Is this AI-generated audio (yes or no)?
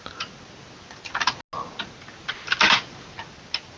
no